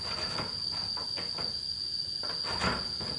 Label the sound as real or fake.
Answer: real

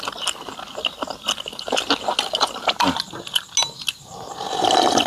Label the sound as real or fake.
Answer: real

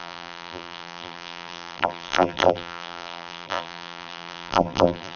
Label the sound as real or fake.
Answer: fake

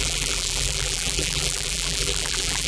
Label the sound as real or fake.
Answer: fake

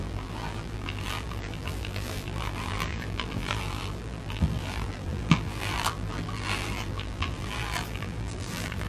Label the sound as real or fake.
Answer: fake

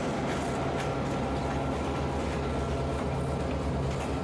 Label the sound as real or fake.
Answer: real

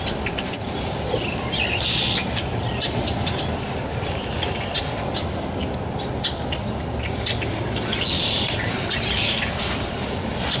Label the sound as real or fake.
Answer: real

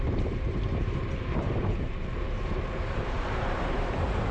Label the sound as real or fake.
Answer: fake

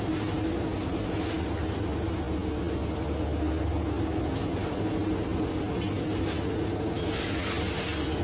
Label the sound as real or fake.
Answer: real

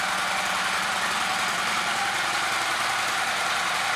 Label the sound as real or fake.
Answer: real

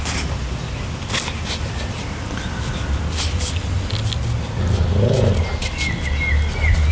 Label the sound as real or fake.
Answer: real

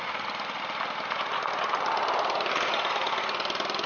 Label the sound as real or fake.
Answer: real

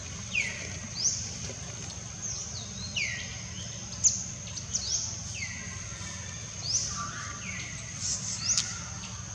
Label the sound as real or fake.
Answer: real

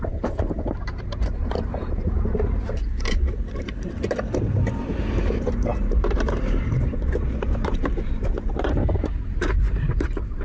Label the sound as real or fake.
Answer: fake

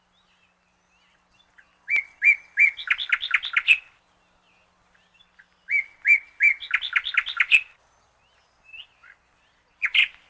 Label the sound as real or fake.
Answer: real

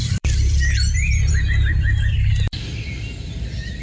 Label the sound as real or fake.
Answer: fake